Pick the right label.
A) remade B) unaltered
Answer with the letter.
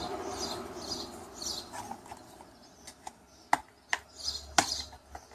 B